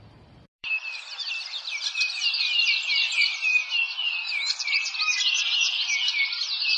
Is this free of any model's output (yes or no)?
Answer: no